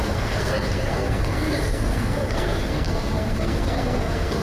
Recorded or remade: remade